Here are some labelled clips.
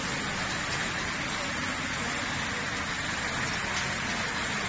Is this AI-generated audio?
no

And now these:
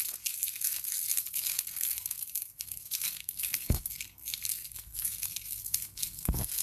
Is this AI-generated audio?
yes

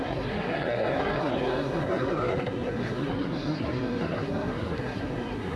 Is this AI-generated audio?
yes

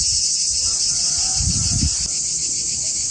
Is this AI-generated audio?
no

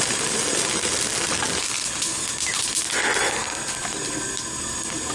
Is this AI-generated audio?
no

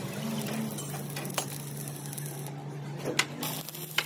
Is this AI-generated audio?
no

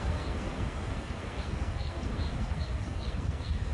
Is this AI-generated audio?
yes